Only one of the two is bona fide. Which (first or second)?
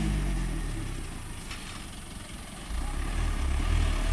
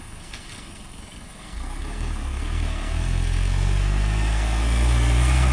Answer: first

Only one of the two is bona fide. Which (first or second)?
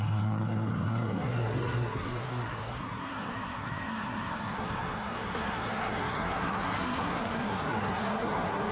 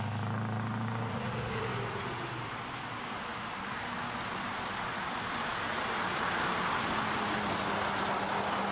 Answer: second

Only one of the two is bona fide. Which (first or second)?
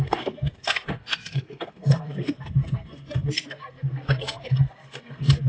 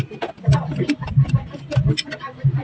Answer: second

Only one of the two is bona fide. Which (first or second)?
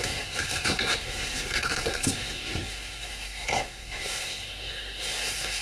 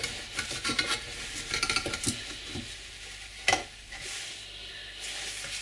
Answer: second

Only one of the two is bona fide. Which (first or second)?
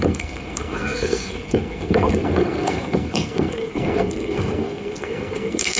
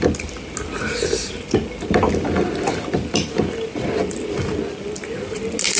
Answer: second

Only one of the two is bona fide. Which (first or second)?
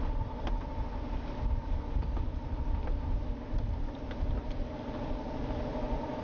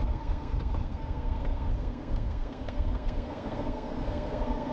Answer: first